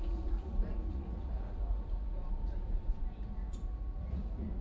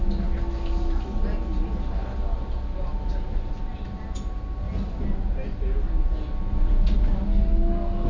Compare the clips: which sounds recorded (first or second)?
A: second